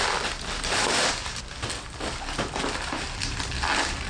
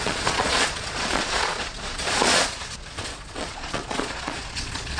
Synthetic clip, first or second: second